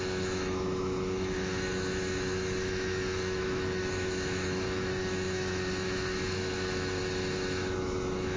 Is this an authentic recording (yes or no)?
no